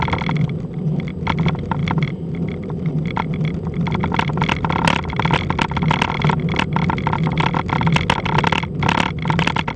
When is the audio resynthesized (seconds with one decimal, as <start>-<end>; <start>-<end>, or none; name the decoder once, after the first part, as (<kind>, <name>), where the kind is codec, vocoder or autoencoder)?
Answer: 1.8-2.9 (vocoder, BigVGAN v2)